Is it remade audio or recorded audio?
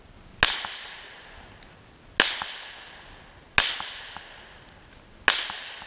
recorded